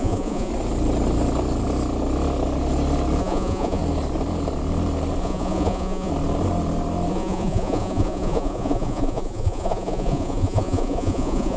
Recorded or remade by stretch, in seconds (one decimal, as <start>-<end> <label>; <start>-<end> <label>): 0.0-0.5 remade; 0.5-3.2 recorded; 3.2-3.8 remade; 3.8-5.2 recorded; 5.2-6.1 remade; 6.1-7.1 recorded; 7.1-11.6 remade